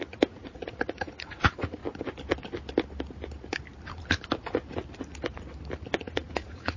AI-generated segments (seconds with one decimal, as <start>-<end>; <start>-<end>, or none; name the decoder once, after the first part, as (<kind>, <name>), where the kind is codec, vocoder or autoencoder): 0.0-1.8 (vocoder, Vocos); 5.9-6.8